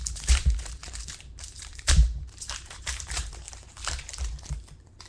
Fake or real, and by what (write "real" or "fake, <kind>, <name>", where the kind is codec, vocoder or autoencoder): fake, vocoder, BigVGAN v2